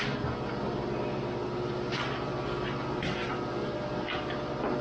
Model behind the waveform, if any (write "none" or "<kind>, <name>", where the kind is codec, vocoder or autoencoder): none